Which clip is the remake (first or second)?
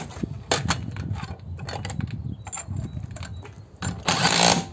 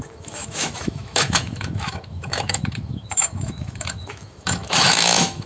second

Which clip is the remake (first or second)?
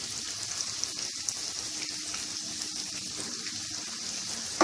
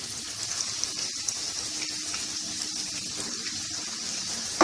second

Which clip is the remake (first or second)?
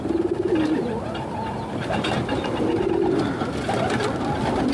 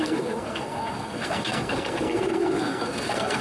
second